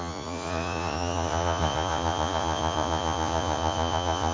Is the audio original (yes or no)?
no